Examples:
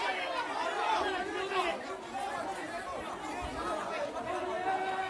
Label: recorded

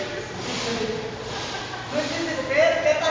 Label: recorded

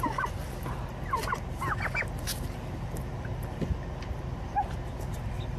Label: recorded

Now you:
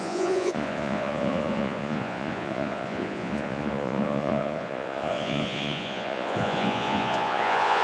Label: remade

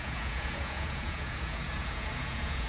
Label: remade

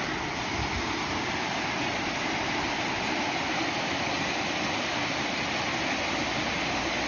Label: recorded